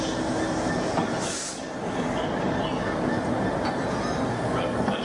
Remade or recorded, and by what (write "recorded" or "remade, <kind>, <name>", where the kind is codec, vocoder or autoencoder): recorded